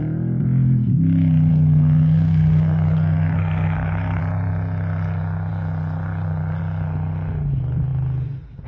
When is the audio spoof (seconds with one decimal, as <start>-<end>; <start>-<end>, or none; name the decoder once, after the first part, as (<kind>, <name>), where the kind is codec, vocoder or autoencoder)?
1.5-4.2 (codec, SNAC)